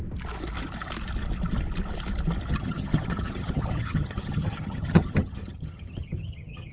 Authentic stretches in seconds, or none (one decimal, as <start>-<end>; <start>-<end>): 0.0-2.5